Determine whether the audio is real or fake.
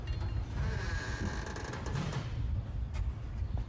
real